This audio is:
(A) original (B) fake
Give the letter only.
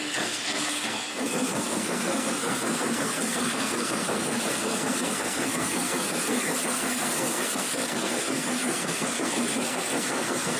B